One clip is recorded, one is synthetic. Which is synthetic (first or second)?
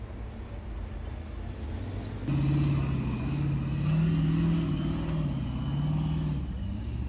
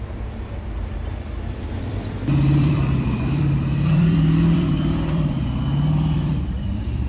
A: second